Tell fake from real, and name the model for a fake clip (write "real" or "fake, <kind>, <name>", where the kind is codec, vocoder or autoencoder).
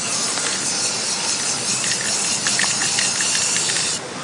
real